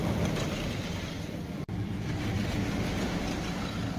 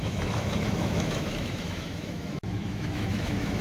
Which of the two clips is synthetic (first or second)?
second